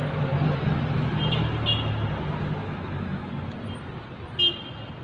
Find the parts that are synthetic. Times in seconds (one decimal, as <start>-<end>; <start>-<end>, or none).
2.6-3.3